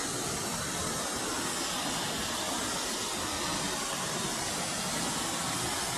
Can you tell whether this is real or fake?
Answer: real